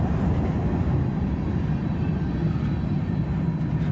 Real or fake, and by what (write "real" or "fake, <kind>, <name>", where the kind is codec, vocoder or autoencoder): real